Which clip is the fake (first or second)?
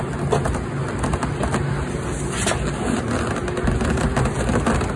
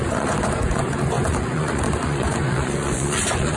second